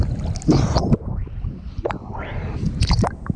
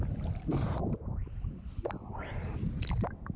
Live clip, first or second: first